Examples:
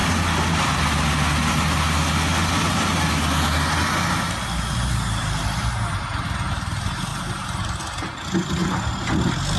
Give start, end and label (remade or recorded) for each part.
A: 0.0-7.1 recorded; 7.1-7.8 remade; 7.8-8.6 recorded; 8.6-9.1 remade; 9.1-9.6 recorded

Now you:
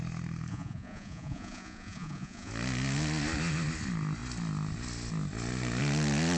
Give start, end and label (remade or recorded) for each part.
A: 0.0-0.5 recorded; 0.5-2.5 remade; 2.5-6.4 recorded

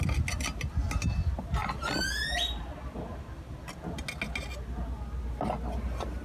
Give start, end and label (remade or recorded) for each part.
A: 0.0-6.2 recorded

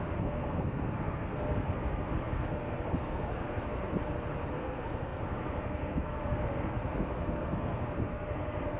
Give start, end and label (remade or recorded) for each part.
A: 0.0-3.9 remade; 3.9-4.5 recorded; 4.5-8.8 remade